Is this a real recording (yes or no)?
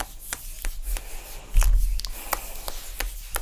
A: yes